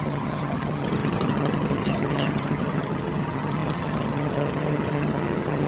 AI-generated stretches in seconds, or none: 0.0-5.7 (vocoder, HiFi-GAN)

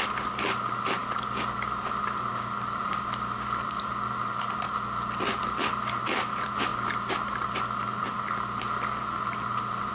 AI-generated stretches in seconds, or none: none

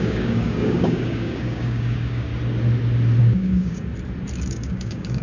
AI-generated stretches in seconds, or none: 0.0-2.3 (codec, DAC); 3.2-3.9; 4.5-5.2

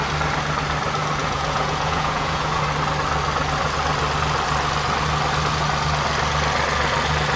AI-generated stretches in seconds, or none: 1.2-2.6 (vocoder, Vocos)

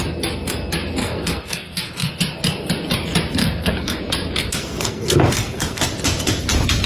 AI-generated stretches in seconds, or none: 1.0-2.1 (codec, SNAC); 3.4-4.0; 4.4-5.8

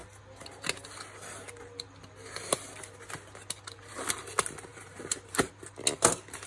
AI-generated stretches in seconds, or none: 4.7-5.6 (vocoder, BigVGAN v2)

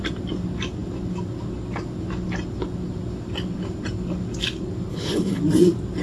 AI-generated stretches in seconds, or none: 4.9-5.4 (codec, HILCodec)